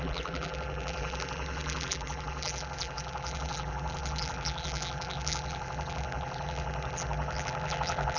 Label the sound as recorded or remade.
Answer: remade